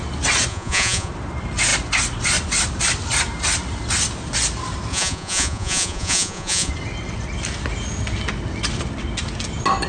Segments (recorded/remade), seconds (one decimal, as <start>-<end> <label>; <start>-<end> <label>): 0.0-0.5 recorded; 0.5-1.1 remade; 1.1-4.9 recorded; 4.9-6.7 remade; 6.7-9.9 recorded